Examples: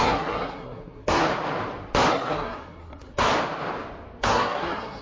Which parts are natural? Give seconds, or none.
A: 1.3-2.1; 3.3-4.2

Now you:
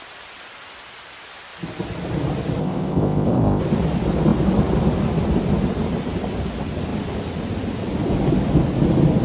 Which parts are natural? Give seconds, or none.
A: 0.0-2.6; 3.6-9.2

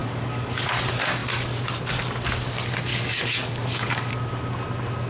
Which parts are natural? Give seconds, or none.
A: 0.6-2.9; 4.1-5.1

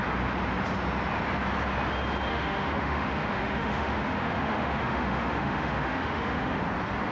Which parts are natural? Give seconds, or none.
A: 0.0-2.3; 6.6-7.1

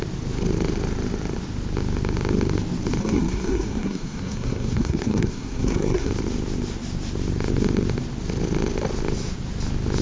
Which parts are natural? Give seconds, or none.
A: 0.0-3.0; 6.1-10.0

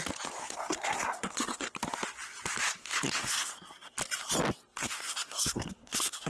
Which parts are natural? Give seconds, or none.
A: 0.0-0.4; 1.7-2.8; 3.9-4.8